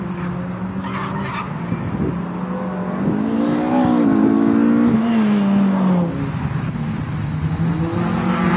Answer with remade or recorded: recorded